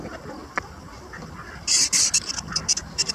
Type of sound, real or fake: real